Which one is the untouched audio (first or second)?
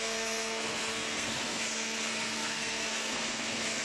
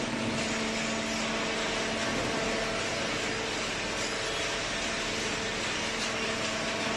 second